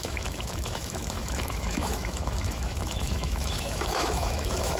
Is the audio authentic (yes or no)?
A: no